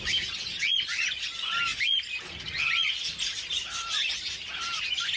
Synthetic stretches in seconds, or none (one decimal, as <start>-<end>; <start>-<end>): none